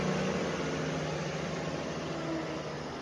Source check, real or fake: real